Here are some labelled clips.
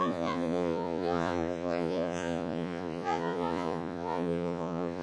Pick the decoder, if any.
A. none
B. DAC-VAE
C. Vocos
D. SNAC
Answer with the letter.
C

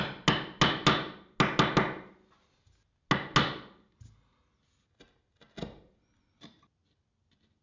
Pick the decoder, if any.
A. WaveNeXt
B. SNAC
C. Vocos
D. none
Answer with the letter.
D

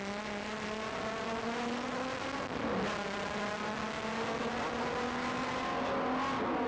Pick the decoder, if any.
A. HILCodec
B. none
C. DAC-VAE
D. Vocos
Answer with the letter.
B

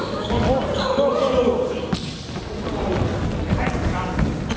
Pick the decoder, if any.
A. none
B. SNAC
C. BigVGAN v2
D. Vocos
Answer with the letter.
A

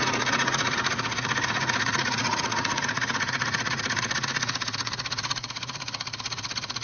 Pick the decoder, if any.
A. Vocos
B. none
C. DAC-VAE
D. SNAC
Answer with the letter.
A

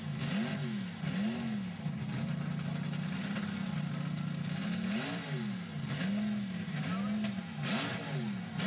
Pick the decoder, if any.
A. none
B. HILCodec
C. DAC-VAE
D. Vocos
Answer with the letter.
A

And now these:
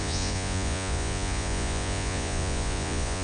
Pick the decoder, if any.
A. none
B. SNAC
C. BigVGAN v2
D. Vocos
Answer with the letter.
D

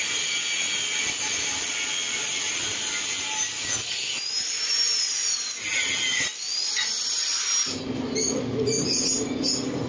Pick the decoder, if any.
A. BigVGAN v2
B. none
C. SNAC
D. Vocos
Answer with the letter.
B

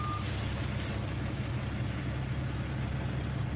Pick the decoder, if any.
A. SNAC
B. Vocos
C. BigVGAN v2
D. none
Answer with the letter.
D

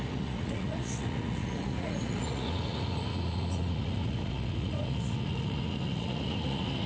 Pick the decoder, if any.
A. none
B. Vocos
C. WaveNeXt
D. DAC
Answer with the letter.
B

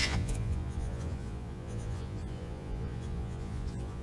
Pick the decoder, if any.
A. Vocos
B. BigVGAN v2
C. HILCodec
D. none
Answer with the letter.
A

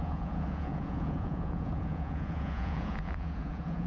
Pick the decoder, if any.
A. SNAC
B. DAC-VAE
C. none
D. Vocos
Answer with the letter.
D